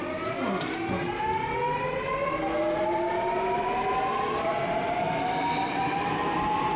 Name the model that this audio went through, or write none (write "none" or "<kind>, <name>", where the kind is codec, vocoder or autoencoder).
none